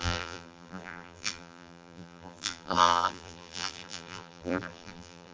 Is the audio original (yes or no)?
no